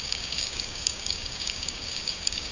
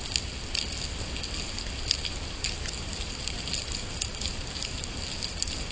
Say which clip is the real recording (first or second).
second